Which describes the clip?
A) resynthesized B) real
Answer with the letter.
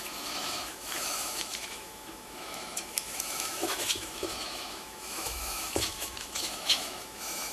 A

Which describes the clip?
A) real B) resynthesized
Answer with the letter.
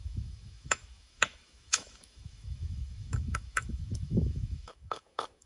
B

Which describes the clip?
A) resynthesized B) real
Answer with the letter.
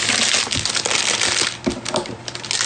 B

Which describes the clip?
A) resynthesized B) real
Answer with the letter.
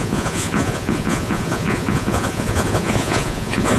A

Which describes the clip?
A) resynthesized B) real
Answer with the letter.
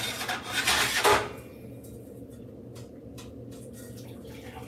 B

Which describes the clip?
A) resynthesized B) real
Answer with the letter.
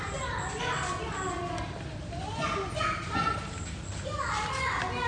B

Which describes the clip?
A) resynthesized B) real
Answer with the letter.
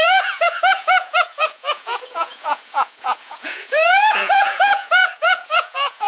A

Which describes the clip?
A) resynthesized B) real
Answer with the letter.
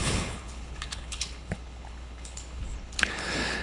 A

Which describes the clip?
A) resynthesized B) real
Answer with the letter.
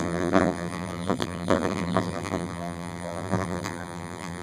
A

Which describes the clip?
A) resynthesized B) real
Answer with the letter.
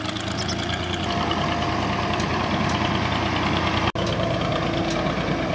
B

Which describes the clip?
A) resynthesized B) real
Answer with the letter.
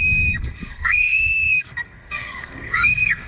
A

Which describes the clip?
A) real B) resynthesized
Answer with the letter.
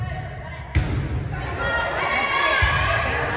A